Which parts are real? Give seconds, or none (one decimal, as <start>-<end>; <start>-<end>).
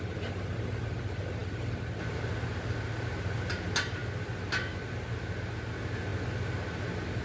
0.0-7.2